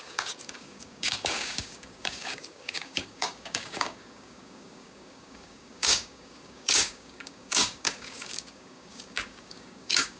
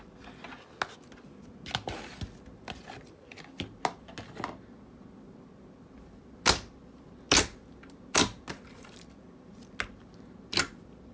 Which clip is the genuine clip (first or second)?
second